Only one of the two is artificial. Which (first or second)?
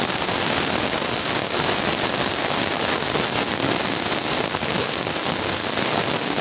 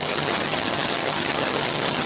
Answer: second